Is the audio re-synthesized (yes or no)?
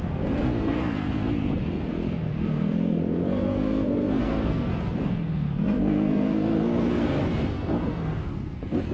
yes